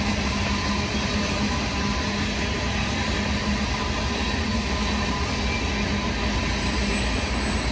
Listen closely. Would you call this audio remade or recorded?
recorded